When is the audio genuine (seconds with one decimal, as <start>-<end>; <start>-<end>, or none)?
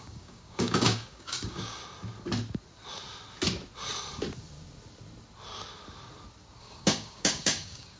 1.8-6.6